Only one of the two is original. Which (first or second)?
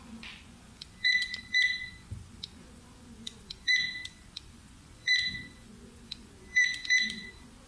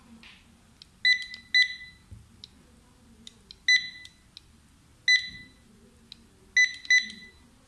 second